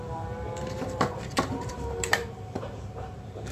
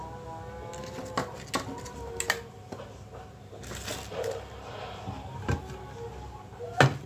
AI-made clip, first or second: first